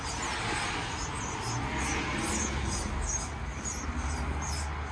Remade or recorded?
recorded